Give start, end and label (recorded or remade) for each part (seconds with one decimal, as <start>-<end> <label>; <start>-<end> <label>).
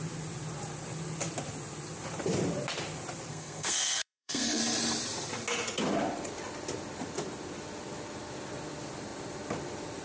0.0-3.3 recorded; 3.3-4.6 remade; 4.6-10.0 recorded